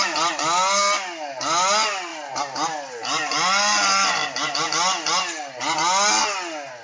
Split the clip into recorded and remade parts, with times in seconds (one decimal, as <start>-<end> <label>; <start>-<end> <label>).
0.0-6.8 recorded